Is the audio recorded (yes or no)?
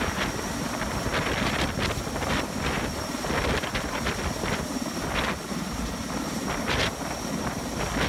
yes